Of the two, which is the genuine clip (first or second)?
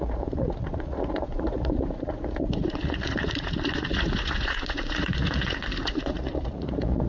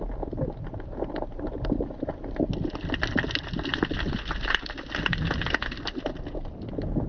second